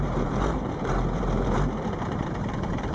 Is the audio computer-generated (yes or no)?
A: yes